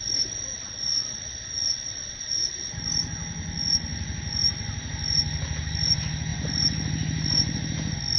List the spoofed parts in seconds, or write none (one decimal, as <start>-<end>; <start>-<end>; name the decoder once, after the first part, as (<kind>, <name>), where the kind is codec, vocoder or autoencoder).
0.5-2.7 (vocoder, Vocos)